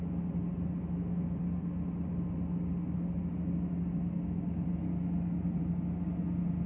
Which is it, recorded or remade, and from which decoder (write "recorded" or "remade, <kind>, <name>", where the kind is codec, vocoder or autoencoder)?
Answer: recorded